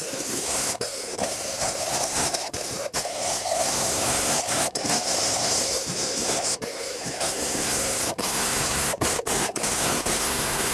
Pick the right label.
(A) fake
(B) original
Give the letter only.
A